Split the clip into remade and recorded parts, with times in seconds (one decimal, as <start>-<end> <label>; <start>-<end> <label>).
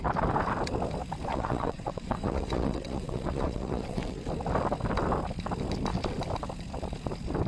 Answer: 0.0-1.3 recorded; 1.3-4.2 remade; 4.2-7.5 recorded